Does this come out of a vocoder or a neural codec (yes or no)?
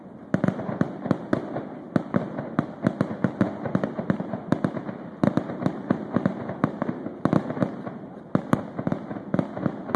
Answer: no